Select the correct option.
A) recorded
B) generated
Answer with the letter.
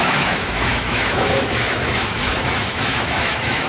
B